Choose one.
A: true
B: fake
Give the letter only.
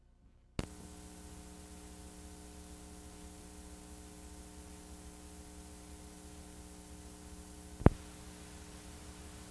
A